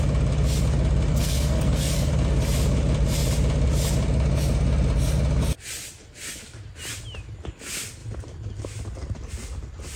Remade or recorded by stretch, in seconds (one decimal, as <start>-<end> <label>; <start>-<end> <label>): 0.0-1.1 recorded; 1.1-2.1 remade; 2.1-10.0 recorded